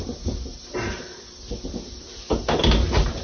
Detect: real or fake real